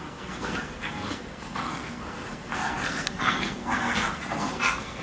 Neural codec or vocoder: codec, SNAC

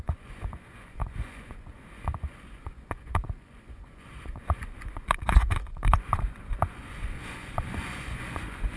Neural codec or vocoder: vocoder, Vocos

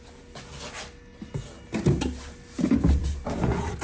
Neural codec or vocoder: none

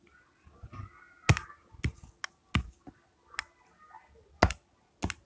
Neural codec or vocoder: none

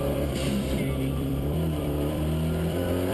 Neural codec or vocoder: vocoder, BigVGAN v2